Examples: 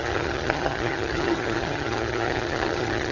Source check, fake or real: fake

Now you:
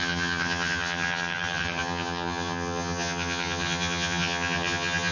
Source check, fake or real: fake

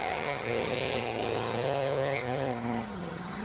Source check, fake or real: fake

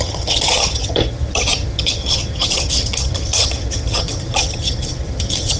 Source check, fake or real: fake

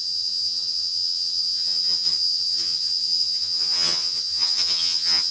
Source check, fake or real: fake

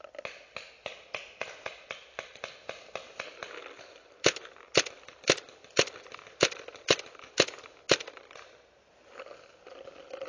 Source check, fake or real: real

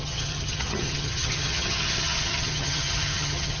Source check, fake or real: fake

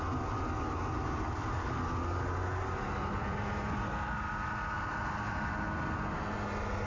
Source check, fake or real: real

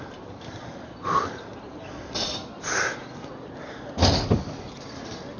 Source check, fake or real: real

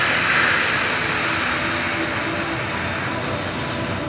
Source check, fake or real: real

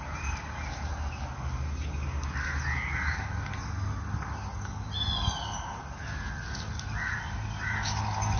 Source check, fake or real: real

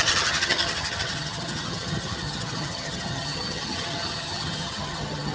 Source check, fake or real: fake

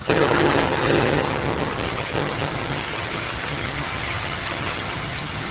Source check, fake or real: fake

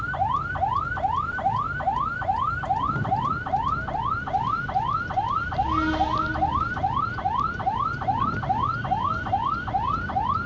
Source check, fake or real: real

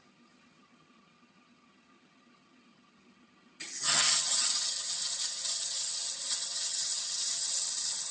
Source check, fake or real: fake